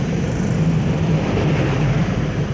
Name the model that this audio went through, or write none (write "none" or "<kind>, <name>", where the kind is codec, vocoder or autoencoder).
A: vocoder, BigVGAN v2